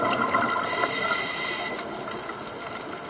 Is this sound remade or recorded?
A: recorded